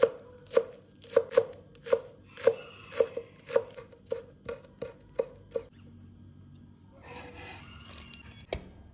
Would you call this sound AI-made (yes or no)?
no